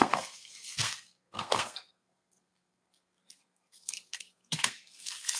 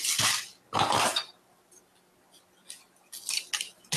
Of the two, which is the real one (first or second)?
second